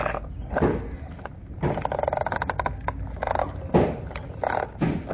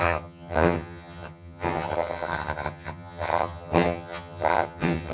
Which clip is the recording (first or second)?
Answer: first